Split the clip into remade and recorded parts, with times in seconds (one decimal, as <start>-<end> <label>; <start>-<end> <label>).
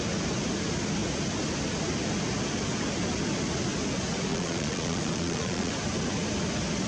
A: 0.0-4.3 recorded; 4.3-5.7 remade; 5.7-6.9 recorded